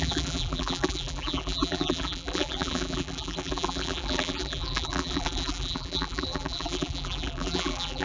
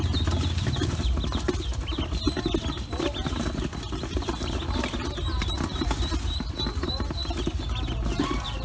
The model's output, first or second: first